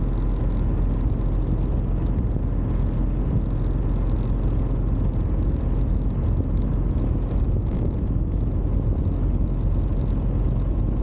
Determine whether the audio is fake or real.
real